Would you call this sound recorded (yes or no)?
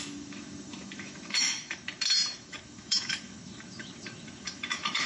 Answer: no